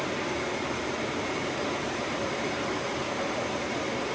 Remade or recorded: remade